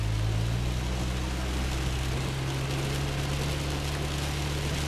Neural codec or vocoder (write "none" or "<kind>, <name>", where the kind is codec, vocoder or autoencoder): none